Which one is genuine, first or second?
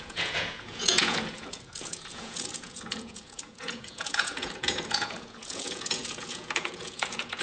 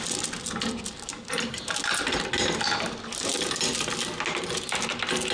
second